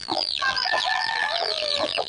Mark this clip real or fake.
fake